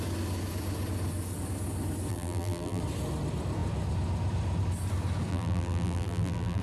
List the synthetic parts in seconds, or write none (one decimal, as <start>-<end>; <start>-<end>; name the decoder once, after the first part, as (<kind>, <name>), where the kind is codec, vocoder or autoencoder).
2.1-2.8 (vocoder, BigVGAN v2); 5.3-6.6